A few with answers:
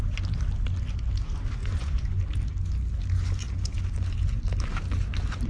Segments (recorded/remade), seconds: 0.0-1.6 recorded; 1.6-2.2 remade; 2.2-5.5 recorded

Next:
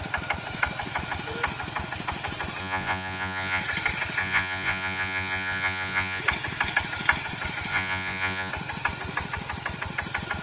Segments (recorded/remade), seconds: 0.0-2.6 recorded; 2.6-3.6 remade; 3.6-4.2 recorded; 4.2-6.2 remade; 6.2-7.7 recorded; 7.7-8.5 remade; 8.5-10.4 recorded

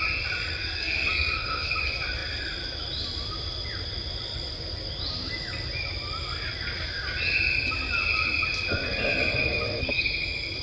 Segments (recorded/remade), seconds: 0.0-0.6 recorded; 0.6-1.7 remade; 1.7-10.6 recorded

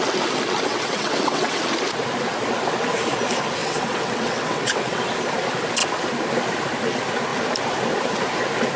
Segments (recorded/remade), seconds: 0.0-0.7 recorded; 0.7-1.6 remade; 1.6-3.6 recorded; 3.6-5.0 remade; 5.0-8.8 recorded